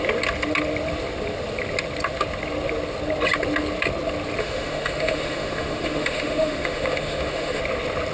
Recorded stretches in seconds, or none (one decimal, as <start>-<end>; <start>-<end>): 0.0-4.4; 7.6-8.1